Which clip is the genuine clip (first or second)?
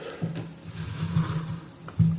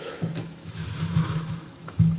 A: first